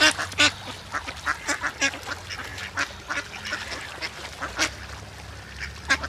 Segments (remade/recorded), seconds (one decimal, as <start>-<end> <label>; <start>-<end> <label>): 0.0-6.1 recorded